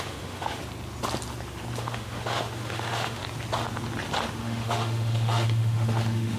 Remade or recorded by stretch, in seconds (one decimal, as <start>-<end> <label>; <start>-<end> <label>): 0.0-0.6 remade; 0.6-1.8 recorded; 1.8-3.2 remade; 3.2-4.2 recorded; 4.2-6.4 remade